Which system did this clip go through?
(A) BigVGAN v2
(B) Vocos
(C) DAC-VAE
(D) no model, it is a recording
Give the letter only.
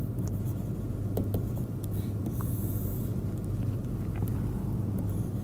D